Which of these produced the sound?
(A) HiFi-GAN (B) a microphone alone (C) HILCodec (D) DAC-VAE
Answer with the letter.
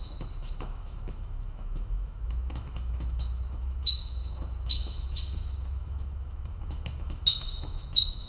D